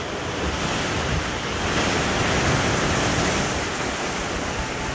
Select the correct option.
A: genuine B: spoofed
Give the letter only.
A